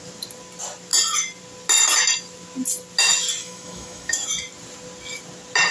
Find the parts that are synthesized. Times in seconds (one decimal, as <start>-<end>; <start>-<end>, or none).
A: 3.4-4.3